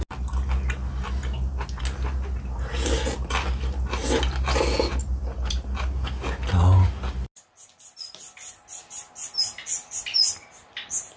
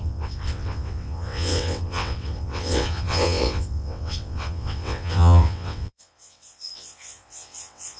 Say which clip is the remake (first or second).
second